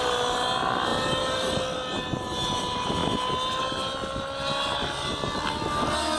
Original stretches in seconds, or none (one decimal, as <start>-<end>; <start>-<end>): 0.0-6.2